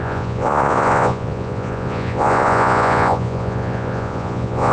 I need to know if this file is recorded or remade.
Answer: remade